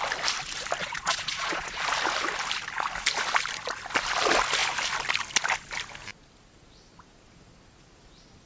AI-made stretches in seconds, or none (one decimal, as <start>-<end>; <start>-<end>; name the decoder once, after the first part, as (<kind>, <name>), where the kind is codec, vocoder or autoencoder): 0.8-1.8 (vocoder, Vocos)